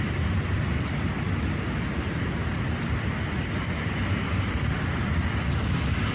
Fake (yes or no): no